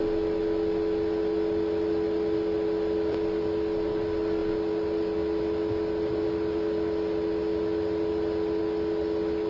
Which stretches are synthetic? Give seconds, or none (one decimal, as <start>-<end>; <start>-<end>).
none